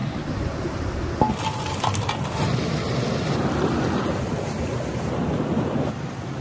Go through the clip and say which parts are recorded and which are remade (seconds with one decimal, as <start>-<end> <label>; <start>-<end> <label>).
0.0-6.4 recorded